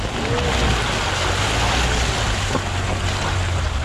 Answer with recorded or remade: recorded